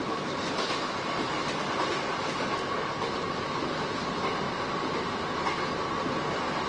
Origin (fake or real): real